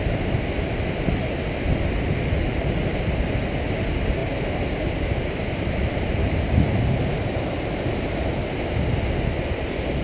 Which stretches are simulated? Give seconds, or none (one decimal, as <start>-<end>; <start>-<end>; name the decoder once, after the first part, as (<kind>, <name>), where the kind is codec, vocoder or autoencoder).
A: none

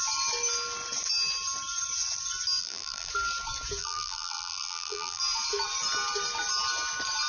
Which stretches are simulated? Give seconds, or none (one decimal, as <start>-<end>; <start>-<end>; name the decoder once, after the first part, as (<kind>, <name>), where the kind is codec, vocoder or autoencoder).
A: 2.6-3.1 (vocoder, BigVGAN v2); 3.8-5.2

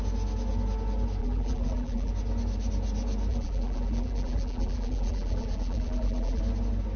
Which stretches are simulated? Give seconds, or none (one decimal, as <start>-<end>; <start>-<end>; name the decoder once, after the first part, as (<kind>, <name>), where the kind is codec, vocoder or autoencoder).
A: 1.2-2.1 (vocoder, BigVGAN v2); 3.3-6.4

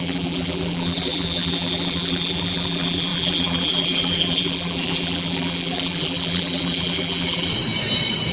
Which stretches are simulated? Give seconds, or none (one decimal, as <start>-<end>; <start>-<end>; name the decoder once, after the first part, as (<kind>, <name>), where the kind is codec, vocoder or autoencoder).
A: 0.0-7.5 (vocoder, BigVGAN v2)

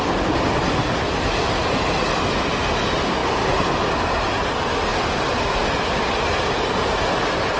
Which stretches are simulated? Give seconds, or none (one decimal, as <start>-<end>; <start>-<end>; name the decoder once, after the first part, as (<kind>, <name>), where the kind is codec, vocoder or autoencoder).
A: 4.9-5.6 (vocoder, BigVGAN v2)

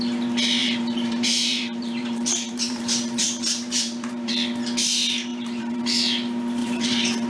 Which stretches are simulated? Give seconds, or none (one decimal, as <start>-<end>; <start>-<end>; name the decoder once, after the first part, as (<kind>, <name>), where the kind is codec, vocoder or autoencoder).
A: 0.6-4.3 (vocoder, BigVGAN v2); 5.3-5.8; 6.6-7.3